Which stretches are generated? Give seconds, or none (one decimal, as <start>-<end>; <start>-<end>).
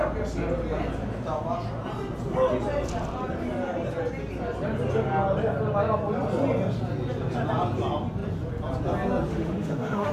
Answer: 9.3-10.1